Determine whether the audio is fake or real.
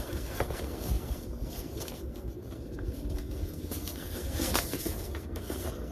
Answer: fake